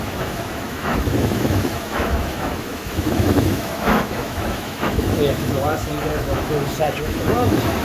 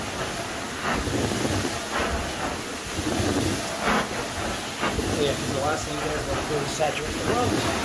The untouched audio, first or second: second